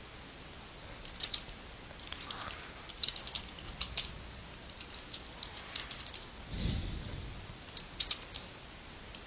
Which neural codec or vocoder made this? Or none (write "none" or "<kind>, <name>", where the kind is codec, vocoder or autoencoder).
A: none